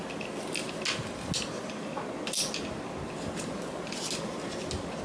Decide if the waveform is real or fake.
real